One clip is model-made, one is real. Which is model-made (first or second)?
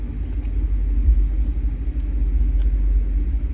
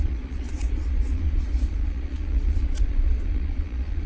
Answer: second